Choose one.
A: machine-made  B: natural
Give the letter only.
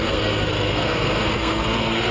A